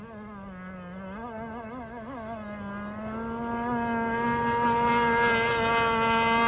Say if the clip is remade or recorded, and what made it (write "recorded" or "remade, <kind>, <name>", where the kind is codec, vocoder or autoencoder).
recorded